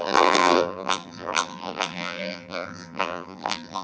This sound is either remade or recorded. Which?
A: remade